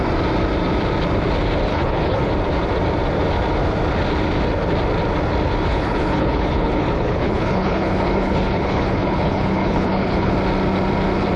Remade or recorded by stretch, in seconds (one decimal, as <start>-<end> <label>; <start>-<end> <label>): 0.0-1.7 recorded; 1.7-2.3 remade; 2.3-5.7 recorded; 5.7-10.3 remade; 10.3-11.4 recorded